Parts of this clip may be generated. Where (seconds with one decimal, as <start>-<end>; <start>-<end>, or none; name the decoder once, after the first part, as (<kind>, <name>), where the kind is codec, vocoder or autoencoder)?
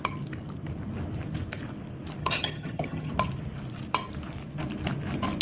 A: 2.2-3.1 (vocoder, HiFi-GAN)